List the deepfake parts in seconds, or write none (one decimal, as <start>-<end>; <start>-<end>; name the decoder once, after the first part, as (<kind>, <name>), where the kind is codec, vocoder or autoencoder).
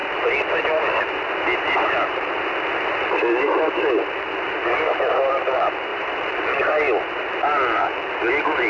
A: 5.9-7.3 (vocoder, BigVGAN v2)